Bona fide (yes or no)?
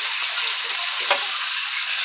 yes